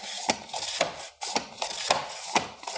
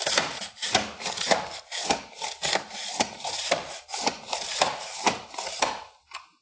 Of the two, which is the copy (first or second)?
second